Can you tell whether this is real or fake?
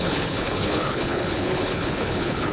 fake